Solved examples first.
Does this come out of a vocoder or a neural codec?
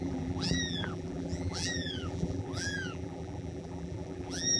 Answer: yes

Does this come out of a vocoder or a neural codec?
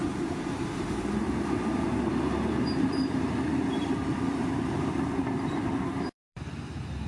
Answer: yes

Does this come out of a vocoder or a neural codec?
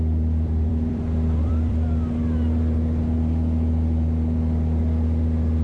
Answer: yes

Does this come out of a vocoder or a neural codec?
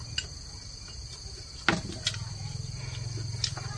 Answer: no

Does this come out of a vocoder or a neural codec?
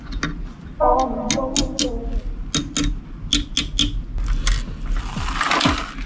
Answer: no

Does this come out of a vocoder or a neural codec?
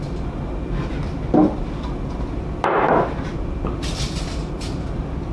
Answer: yes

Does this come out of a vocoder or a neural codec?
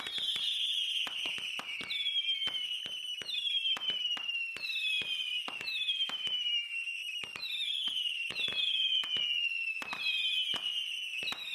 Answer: no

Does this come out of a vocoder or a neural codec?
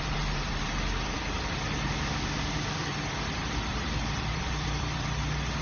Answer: yes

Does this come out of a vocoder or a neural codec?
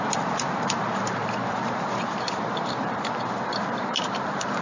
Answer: yes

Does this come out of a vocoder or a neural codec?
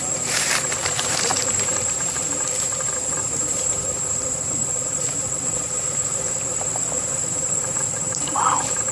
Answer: yes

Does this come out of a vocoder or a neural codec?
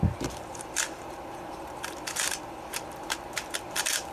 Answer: yes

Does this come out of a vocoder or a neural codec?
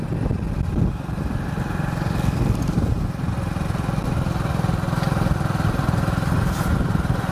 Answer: no